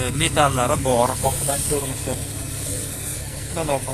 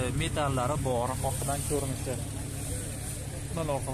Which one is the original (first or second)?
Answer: second